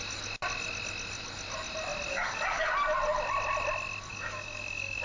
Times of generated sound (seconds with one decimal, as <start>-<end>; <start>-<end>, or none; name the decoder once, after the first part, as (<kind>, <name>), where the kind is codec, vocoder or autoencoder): 2.1-2.7 (codec, DAC); 4.1-5.0

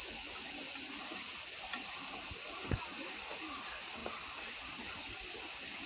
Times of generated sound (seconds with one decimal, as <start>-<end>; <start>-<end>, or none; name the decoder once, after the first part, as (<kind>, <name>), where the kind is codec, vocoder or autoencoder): none